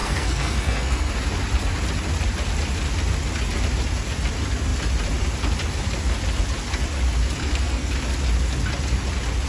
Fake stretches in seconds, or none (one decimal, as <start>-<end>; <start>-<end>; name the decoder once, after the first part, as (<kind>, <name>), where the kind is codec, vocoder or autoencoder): 0.0-1.1 (codec, SNAC); 7.4-7.9